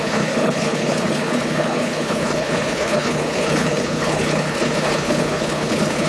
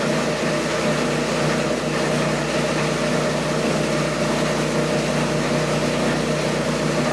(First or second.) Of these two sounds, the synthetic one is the first